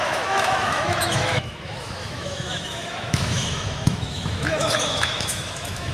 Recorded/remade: remade